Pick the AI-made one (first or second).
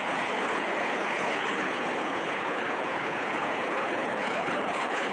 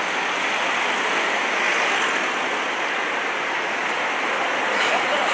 first